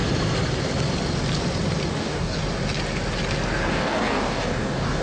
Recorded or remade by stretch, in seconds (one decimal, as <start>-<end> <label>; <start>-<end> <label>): 0.0-1.9 recorded; 1.9-2.4 remade; 2.4-3.7 recorded; 3.7-5.0 remade